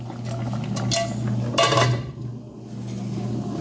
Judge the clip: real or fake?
real